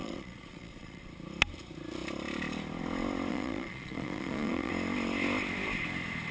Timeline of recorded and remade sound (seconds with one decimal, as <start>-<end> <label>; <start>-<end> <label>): 0.0-1.0 remade; 1.0-3.3 recorded; 3.3-4.7 remade; 4.7-6.3 recorded